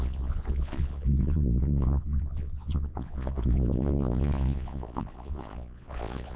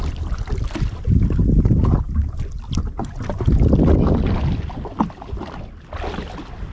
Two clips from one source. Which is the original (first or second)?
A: second